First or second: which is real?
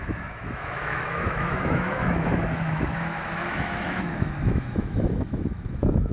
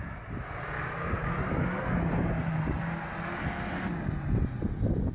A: second